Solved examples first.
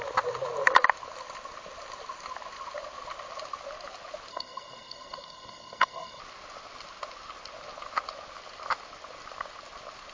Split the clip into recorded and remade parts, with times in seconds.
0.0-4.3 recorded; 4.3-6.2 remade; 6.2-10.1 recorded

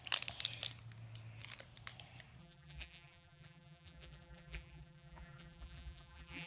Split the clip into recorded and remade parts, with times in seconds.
0.0-2.4 recorded; 2.4-6.5 remade

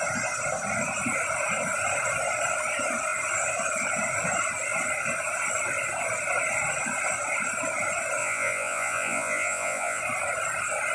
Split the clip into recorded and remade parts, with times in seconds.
0.0-8.2 recorded; 8.2-10.0 remade; 10.0-10.9 recorded

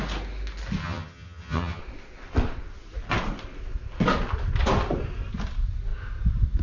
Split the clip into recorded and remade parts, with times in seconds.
0.0-0.8 recorded; 0.8-1.8 remade; 1.8-6.6 recorded